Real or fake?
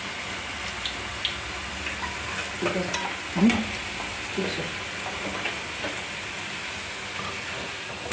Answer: real